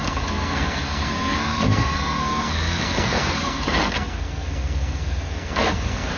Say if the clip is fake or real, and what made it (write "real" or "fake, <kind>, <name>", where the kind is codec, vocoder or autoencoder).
fake, codec, SNAC